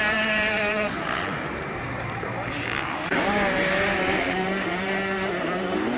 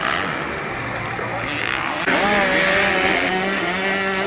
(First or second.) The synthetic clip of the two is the first